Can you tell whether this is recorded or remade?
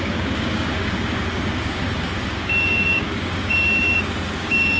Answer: remade